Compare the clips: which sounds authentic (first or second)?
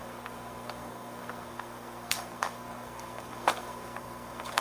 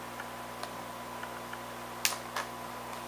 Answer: second